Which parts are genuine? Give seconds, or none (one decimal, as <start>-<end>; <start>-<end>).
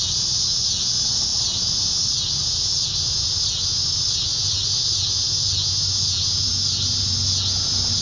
0.0-8.0